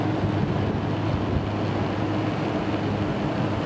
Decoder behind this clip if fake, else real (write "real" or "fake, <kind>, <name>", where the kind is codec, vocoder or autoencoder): real